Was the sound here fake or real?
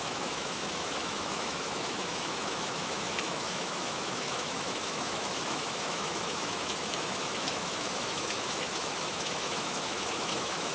fake